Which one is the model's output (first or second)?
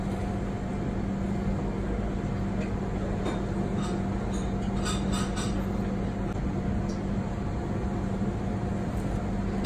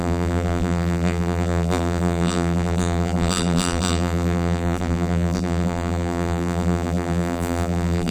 second